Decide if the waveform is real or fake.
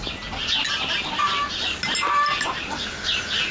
real